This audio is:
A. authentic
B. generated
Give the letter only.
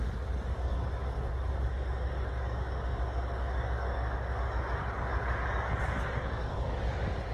B